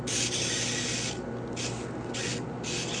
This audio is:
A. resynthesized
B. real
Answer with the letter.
B